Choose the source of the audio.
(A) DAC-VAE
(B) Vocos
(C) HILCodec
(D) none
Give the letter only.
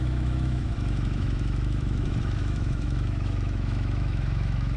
A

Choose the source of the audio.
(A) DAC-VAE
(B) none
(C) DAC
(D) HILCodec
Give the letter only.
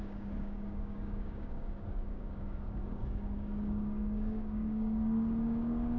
C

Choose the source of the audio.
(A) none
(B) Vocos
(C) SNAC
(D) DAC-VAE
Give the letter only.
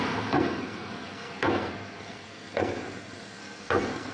C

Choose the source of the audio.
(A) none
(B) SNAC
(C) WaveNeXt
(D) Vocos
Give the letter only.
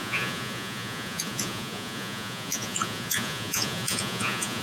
D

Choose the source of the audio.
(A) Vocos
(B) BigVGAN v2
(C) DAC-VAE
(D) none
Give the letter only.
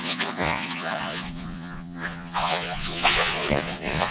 A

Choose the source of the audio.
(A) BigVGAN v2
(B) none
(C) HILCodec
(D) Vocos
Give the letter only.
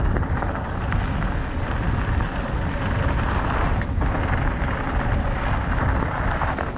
B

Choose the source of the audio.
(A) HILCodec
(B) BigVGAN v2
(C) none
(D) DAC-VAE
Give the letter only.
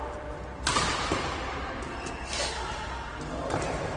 C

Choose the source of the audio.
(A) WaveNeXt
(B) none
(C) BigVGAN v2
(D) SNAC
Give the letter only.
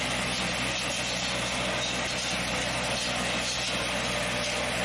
B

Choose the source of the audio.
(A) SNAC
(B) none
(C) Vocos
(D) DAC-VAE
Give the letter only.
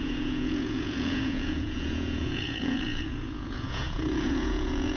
C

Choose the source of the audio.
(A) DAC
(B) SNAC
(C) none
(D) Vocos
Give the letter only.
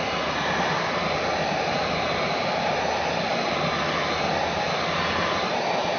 C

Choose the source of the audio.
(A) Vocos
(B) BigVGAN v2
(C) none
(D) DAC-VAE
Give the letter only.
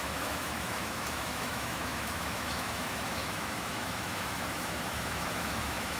D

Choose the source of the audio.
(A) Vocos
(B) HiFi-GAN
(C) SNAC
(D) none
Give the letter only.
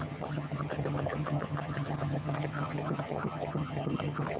B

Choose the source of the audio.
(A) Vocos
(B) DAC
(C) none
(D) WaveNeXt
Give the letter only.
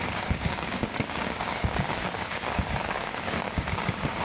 B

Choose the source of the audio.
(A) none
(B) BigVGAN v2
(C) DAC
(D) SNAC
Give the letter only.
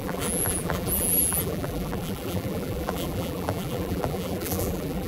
B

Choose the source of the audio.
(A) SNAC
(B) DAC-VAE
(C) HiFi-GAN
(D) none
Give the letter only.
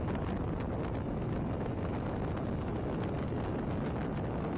D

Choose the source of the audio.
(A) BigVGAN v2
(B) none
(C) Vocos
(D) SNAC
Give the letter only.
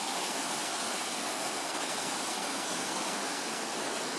D